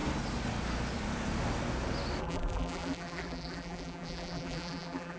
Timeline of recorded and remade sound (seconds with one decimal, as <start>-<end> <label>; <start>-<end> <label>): 0.0-2.2 recorded; 2.2-5.2 remade